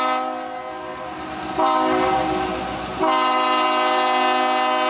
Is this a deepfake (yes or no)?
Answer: no